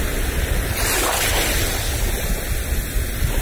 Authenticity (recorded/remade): recorded